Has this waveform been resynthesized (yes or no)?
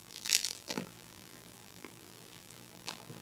yes